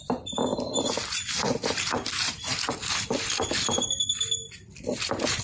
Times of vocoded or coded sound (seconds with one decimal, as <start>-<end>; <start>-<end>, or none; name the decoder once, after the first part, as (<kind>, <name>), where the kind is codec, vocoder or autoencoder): 0.0-0.5 (vocoder, BigVGAN v2); 1.1-5.4